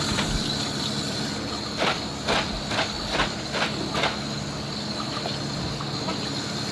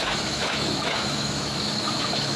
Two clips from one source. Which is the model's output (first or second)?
second